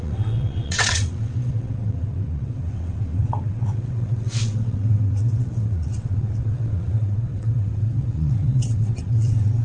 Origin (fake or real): fake